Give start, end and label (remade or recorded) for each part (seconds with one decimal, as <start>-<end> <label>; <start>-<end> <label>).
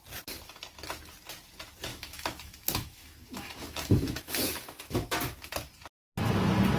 0.0-1.9 recorded; 1.9-5.5 remade; 5.5-6.8 recorded